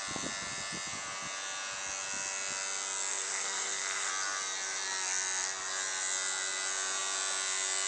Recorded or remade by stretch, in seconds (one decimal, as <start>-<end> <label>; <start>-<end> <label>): 0.0-3.1 recorded; 3.1-4.1 remade; 4.1-7.9 recorded